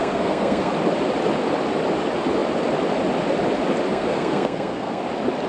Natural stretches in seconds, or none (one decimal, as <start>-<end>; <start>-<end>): 0.7-3.9; 5.0-5.5

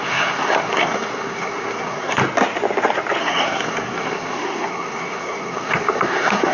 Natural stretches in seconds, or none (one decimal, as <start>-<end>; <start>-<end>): 2.2-3.2

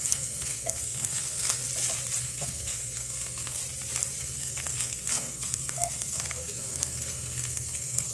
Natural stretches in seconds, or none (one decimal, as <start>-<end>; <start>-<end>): 1.6-2.2; 3.6-4.2